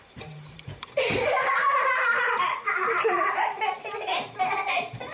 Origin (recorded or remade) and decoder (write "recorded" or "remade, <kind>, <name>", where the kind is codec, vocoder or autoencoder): remade, vocoder, BigVGAN v2